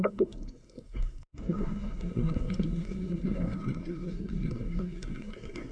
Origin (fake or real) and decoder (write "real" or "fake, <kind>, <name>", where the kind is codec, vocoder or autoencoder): fake, codec, SNAC